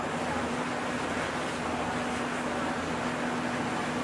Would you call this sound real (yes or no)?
yes